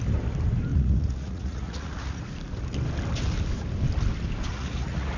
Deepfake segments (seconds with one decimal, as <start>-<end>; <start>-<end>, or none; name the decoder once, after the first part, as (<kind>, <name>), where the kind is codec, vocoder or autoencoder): 0.7-2.2 (vocoder, Vocos); 4.5-5.2